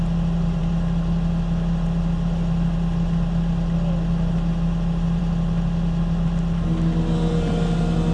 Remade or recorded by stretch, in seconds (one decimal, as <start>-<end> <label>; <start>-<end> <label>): 0.0-8.1 recorded